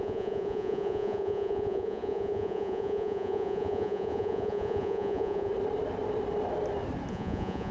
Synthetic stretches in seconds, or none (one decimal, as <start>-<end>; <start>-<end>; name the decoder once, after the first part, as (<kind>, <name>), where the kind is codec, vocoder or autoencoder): 0.0-5.5 (vocoder, Vocos); 7.1-7.7